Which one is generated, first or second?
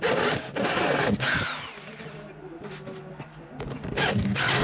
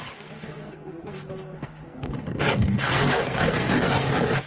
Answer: second